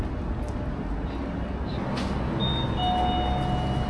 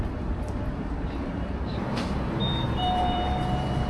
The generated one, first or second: second